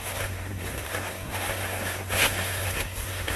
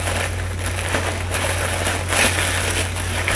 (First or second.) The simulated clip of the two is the first